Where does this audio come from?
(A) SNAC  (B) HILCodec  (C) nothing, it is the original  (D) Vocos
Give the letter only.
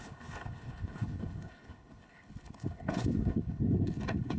B